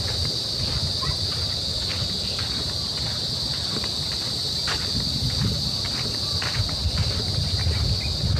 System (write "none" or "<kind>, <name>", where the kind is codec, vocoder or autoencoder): none